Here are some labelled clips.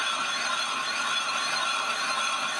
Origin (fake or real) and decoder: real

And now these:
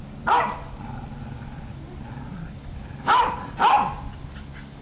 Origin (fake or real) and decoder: real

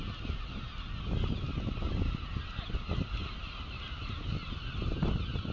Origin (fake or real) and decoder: real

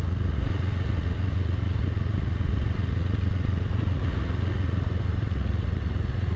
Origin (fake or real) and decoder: fake, vocoder, Vocos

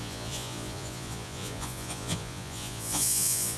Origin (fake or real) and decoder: fake, vocoder, Vocos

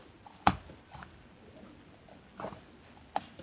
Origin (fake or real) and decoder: real